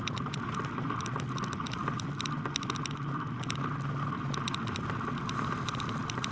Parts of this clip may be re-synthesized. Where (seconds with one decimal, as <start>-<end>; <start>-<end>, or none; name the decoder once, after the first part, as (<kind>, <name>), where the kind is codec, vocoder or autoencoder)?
none